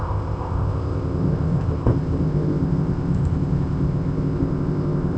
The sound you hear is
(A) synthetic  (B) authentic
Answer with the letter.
A